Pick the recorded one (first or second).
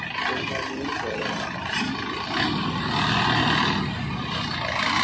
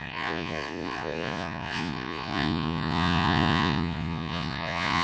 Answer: first